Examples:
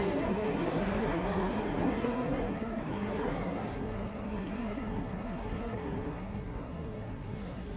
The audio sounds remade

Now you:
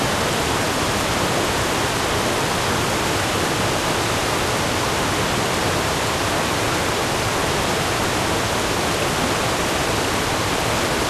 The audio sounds recorded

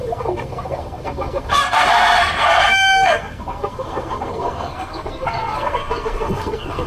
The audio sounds remade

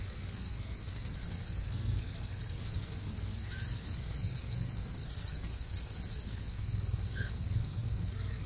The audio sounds remade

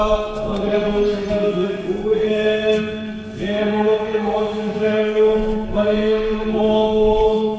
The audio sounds remade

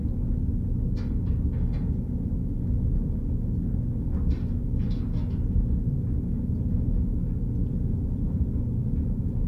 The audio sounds recorded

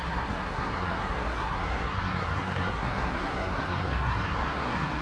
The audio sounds remade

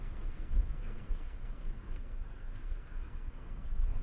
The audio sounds remade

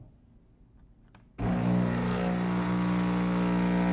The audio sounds recorded